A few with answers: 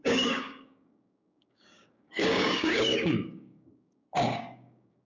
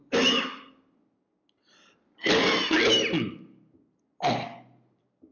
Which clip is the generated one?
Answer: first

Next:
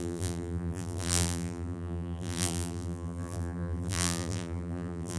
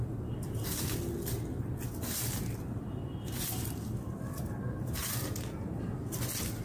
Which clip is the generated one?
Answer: first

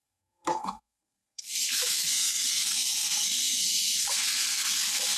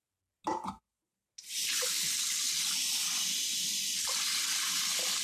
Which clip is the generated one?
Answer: first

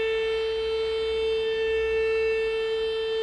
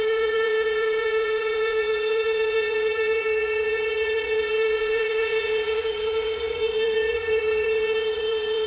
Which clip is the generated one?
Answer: second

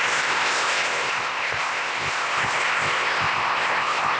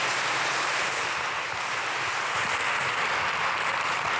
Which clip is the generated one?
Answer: first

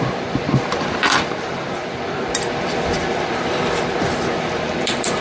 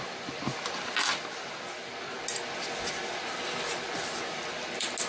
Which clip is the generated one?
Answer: first